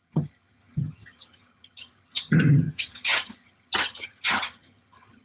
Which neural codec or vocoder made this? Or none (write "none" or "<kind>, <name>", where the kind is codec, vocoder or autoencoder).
vocoder, HiFi-GAN